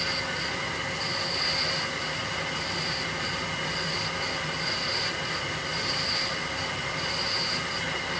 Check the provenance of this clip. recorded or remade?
recorded